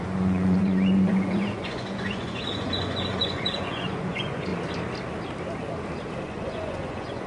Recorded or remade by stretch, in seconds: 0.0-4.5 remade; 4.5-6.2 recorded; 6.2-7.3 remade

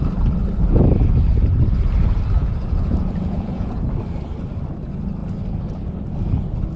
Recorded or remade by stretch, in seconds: 0.0-2.4 recorded; 2.4-3.9 remade; 3.9-6.8 recorded

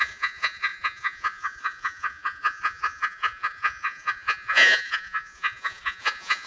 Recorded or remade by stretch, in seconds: 0.0-6.5 remade

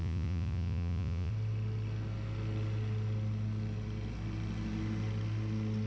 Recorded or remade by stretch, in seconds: 0.0-1.3 remade; 1.3-5.9 recorded

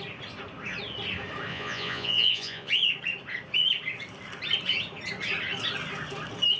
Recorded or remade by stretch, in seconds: 0.0-1.5 recorded; 1.5-2.7 remade; 2.7-6.6 recorded